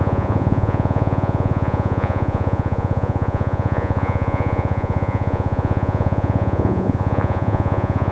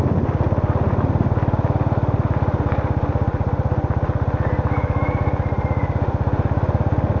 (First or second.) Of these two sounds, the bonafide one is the second